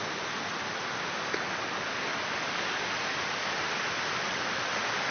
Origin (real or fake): real